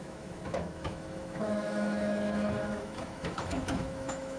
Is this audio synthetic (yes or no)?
yes